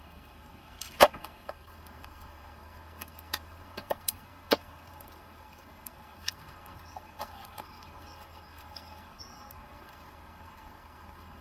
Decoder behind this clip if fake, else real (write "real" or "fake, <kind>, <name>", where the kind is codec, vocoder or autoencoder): fake, codec, SNAC